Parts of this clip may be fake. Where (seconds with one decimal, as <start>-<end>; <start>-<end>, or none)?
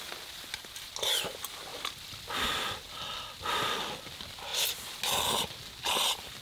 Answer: 1.7-3.4